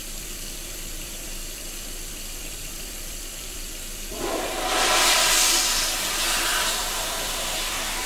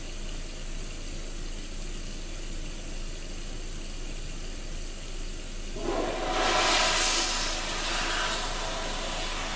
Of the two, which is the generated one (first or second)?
first